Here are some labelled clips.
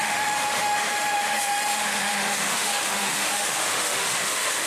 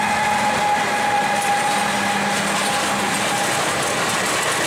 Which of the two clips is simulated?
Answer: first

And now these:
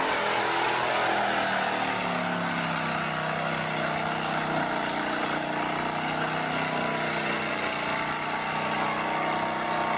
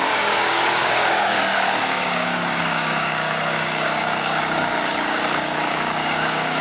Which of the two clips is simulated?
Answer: second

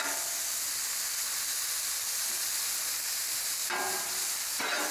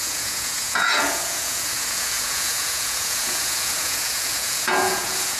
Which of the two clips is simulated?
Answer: second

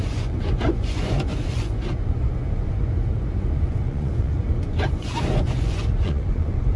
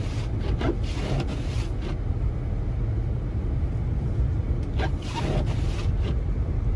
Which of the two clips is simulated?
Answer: first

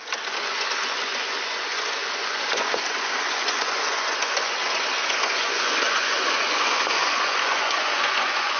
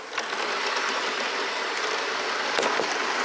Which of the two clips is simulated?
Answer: first